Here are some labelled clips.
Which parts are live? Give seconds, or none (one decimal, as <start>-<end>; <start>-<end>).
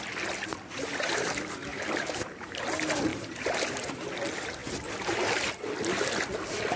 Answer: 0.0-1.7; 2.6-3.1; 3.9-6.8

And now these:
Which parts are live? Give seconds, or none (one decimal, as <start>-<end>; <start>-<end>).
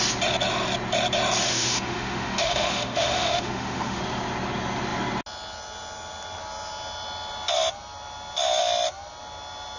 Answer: 0.0-1.5; 4.0-9.8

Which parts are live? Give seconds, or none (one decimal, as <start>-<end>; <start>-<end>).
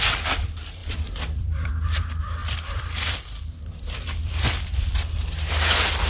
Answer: 0.0-0.8; 1.7-2.4; 4.9-6.1